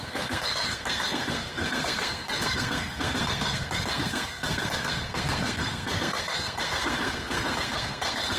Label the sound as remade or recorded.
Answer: remade